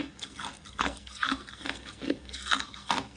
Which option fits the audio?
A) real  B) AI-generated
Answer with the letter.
B